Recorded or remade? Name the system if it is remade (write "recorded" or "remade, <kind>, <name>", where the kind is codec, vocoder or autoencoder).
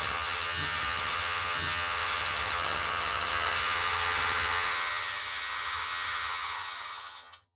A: remade, vocoder, HiFi-GAN